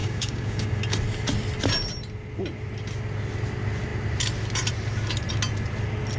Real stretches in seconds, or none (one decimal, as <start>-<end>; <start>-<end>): 0.8-6.2